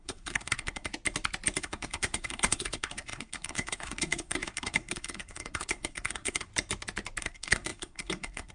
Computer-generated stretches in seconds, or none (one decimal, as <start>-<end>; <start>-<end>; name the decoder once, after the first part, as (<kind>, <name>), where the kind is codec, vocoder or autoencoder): 0.0-0.9 (codec, SNAC); 1.6-6.5; 7.2-8.5